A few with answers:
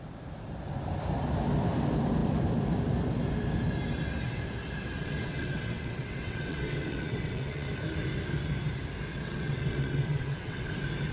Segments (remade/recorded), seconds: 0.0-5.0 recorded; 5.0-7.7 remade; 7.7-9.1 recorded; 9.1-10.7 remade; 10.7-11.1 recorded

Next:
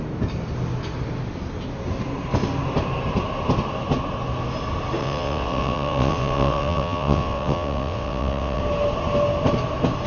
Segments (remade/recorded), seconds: 0.0-5.0 recorded; 5.0-8.6 remade; 8.6-10.1 recorded

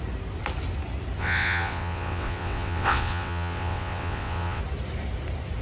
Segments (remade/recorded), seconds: 0.0-1.2 recorded; 1.2-4.6 remade; 4.6-5.6 recorded

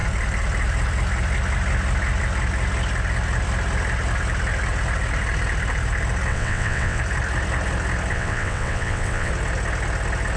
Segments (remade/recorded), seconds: 0.0-6.3 recorded; 6.3-7.0 remade; 7.0-8.1 recorded; 8.1-9.3 remade; 9.3-10.4 recorded

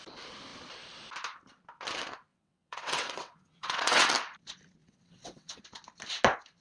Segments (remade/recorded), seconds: 0.0-2.3 recorded; 2.3-4.1 remade; 4.1-4.8 recorded; 4.8-5.6 remade; 5.6-6.6 recorded

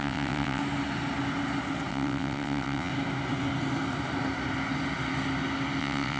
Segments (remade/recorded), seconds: 0.0-0.6 remade; 0.6-1.9 recorded; 1.9-2.9 remade; 2.9-5.8 recorded; 5.8-6.2 remade

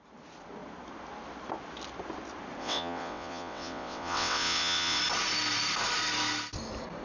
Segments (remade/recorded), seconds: 0.0-2.6 recorded; 2.6-5.0 remade; 5.0-7.0 recorded